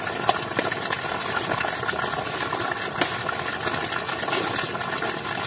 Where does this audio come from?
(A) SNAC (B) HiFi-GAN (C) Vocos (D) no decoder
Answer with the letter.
D